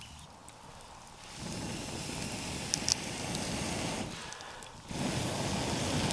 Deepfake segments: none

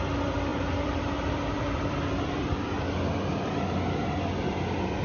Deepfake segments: 0.5-3.5 (vocoder, BigVGAN v2)

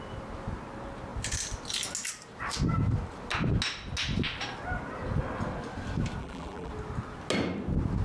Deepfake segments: 6.2-6.7 (vocoder, BigVGAN v2)